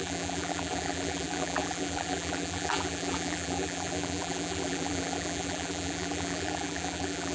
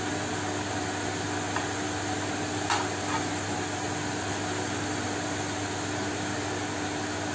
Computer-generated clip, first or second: first